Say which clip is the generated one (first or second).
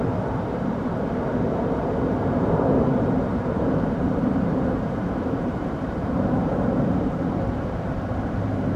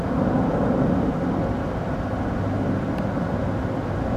first